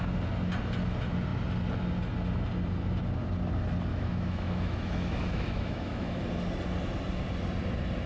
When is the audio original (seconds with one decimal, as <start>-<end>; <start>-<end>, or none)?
0.0-3.9; 6.2-8.1